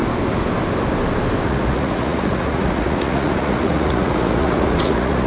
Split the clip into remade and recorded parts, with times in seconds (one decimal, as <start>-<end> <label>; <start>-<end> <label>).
0.0-1.5 recorded; 1.5-5.3 remade